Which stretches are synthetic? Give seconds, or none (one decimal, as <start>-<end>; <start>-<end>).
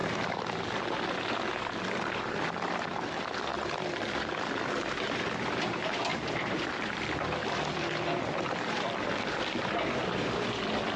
0.0-0.5; 6.1-7.2